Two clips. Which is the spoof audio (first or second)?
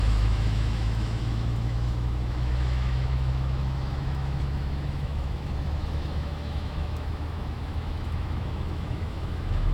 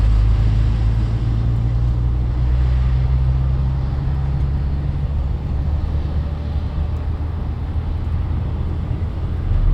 first